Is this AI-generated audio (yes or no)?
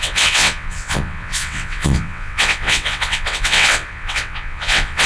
yes